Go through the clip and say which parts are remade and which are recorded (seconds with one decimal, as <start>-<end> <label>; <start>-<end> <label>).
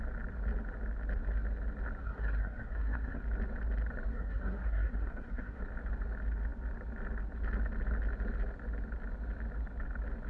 0.0-2.0 recorded; 2.0-3.2 remade; 3.2-4.1 recorded; 4.1-5.6 remade; 5.6-10.3 recorded